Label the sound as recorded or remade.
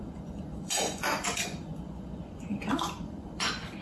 remade